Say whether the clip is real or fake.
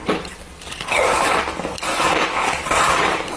fake